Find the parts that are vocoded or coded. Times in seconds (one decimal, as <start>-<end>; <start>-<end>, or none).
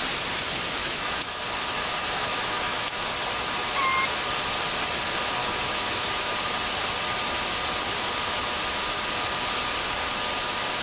0.8-1.4; 1.8-3.0; 5.4-6.3